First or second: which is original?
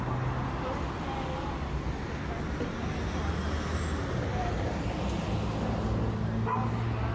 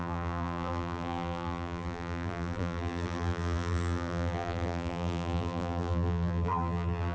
first